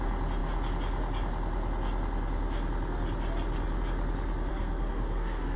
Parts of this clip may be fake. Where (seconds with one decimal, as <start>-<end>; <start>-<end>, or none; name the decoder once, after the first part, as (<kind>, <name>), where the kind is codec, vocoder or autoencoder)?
4.5-5.6 (codec, SNAC)